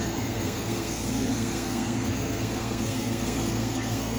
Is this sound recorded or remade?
remade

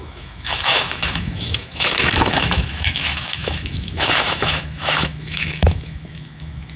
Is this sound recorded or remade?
remade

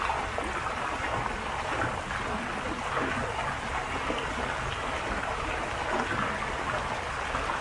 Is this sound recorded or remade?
recorded